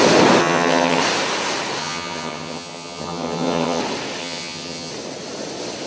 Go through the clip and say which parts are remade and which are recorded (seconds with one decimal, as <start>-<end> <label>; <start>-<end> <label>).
0.0-0.4 recorded; 0.4-1.0 remade; 1.0-1.8 recorded; 1.8-3.8 remade; 3.8-4.2 recorded; 4.2-4.9 remade; 4.9-5.9 recorded